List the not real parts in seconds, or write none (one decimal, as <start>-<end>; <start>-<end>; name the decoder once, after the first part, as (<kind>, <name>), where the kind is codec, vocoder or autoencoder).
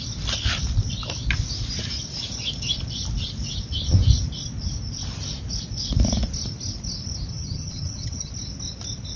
7.3-8.3 (vocoder, HiFi-GAN)